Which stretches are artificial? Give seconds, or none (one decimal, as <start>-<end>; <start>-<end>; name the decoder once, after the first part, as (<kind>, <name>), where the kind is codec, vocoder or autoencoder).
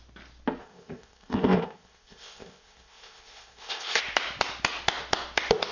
0.6-4.0 (codec, ZipCodec)